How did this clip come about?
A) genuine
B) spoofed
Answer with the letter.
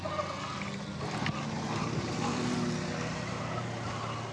A